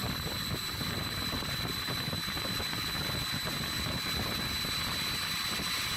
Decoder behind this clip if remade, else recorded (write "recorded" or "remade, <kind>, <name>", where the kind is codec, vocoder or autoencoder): recorded